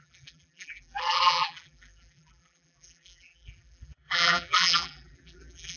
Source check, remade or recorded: remade